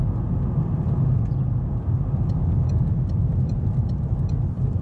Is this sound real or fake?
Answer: real